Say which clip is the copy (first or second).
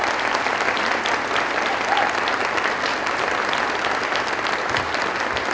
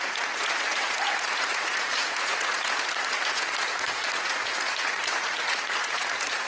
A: second